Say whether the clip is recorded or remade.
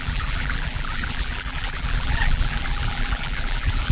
remade